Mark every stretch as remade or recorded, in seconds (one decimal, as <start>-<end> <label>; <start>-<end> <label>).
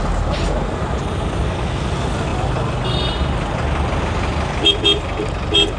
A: 0.0-5.8 recorded